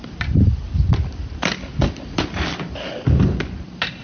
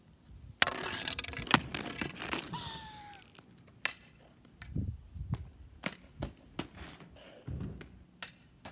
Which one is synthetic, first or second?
first